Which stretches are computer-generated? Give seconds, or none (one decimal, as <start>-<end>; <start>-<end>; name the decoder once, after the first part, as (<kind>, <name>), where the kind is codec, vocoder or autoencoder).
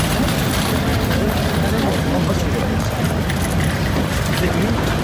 0.5-0.9 (vocoder, BigVGAN v2); 3.9-5.0